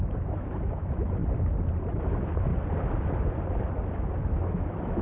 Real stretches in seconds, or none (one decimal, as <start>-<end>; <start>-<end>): 1.2-1.9; 2.5-4.2